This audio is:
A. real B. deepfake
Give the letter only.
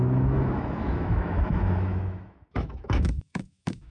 B